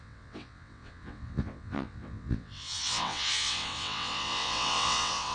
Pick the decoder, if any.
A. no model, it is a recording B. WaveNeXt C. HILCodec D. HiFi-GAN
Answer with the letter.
B